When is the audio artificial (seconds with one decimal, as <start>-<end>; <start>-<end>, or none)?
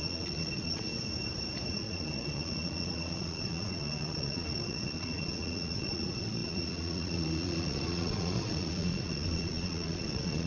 0.0-0.9; 1.7-10.5